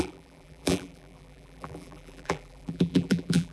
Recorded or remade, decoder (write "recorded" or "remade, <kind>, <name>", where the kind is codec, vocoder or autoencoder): remade, vocoder, BigVGAN v2